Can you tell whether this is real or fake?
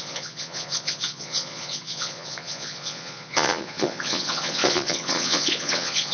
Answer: fake